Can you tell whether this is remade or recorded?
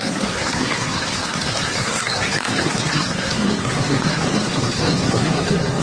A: remade